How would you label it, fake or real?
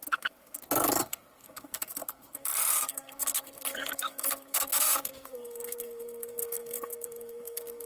fake